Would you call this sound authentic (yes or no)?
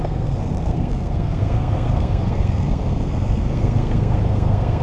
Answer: no